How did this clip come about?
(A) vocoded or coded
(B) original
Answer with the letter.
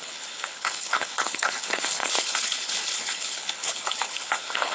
A